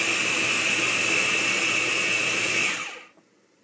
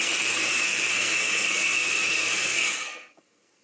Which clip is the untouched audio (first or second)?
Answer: first